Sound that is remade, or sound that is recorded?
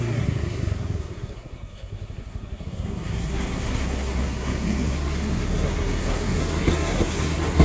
remade